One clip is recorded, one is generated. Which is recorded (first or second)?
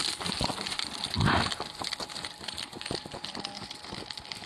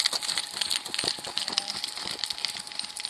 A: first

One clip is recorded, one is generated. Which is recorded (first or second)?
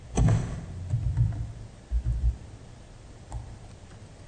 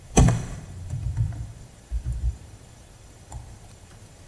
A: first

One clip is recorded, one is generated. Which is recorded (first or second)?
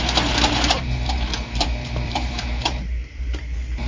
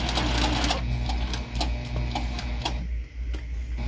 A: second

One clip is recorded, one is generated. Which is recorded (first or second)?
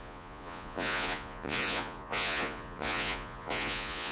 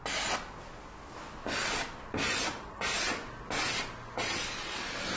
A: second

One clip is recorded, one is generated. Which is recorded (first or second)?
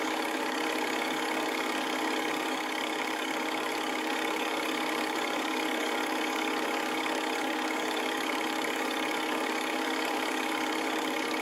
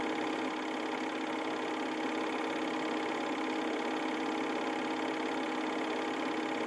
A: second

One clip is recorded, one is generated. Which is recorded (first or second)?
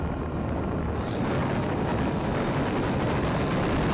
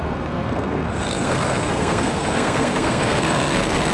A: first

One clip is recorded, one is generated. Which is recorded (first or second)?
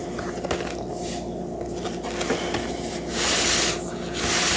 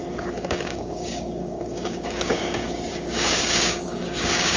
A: first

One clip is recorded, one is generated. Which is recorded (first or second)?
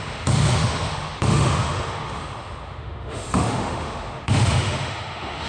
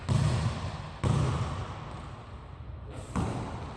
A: second